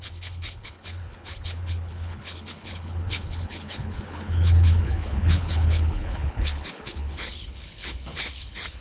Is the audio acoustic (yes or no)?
no